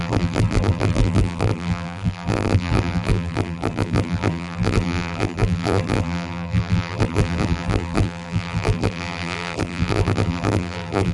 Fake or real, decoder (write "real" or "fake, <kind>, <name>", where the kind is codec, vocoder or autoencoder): fake, vocoder, BigVGAN v2